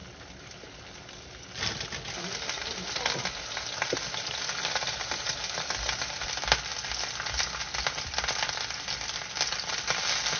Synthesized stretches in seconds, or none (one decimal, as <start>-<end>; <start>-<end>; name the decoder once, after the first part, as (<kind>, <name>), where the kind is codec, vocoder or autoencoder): none